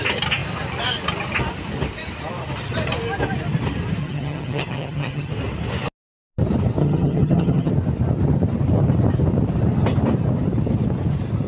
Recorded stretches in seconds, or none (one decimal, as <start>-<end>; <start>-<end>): 0.0-4.0; 5.3-6.8; 7.7-11.5

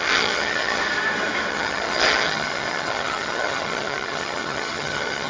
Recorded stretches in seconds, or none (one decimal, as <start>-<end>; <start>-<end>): 0.8-1.5

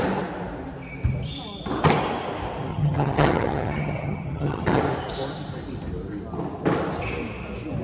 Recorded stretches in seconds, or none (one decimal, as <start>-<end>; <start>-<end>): 0.0-2.7; 4.8-7.8

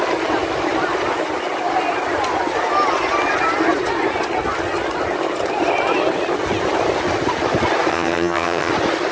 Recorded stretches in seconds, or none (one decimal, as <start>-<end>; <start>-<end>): 0.0-7.9; 8.7-9.1

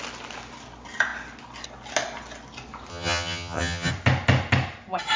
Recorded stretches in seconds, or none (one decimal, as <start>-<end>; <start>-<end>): 0.0-2.9; 3.9-5.2

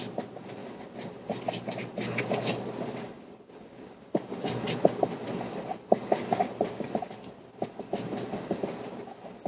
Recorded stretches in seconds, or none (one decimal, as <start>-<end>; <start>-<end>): 0.0-9.5

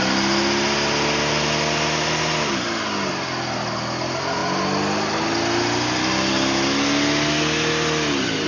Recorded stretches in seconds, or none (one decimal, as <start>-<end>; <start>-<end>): 0.0-8.5